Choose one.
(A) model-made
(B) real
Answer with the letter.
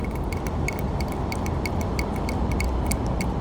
B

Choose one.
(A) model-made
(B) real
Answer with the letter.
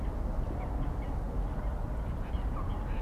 B